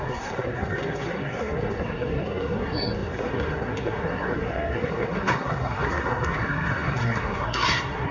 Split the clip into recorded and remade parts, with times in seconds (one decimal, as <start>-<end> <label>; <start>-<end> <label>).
0.0-8.1 remade